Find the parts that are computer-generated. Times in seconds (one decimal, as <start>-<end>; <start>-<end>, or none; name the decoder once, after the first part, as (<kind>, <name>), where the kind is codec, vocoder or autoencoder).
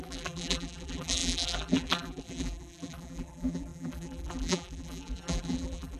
0.0-6.0 (vocoder, BigVGAN v2)